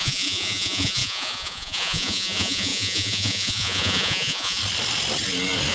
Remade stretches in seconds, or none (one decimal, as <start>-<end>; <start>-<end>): 0.0-4.6